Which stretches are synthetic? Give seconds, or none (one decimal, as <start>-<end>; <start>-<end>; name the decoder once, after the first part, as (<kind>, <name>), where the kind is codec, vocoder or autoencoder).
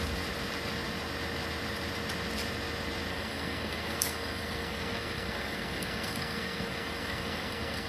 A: 3.1-7.9 (codec, SNAC)